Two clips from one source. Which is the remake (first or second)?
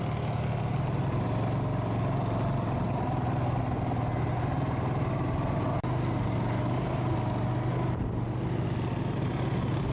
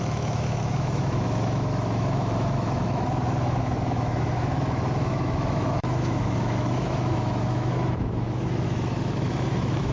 second